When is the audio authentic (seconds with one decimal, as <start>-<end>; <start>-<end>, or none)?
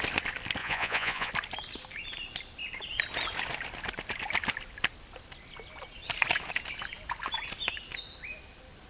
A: 0.0-0.6; 1.3-8.9